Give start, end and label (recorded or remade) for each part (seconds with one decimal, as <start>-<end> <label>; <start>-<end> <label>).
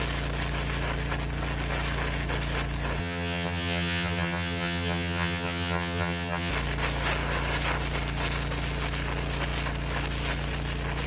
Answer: 0.0-3.0 recorded; 3.0-6.5 remade; 6.5-11.1 recorded